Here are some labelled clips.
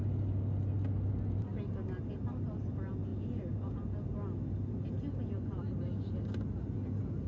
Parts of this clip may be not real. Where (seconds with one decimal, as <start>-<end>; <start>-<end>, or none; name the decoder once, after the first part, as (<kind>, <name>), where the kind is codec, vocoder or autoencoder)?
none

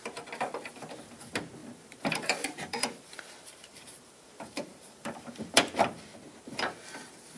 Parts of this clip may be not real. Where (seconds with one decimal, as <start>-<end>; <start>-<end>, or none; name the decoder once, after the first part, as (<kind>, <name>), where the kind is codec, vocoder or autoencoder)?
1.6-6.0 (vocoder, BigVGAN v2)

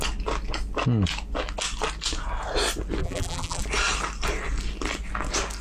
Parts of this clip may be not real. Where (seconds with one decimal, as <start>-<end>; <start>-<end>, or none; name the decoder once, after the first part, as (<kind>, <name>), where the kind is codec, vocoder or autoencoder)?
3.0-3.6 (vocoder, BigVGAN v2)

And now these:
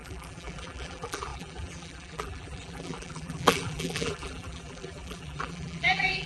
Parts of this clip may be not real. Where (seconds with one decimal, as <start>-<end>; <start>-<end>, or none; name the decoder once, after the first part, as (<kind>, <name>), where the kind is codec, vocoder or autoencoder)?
0.0-6.3 (vocoder, BigVGAN v2)

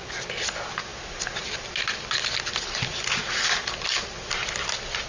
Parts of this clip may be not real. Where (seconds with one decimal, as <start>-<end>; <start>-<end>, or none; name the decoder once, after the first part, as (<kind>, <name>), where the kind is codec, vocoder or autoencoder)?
none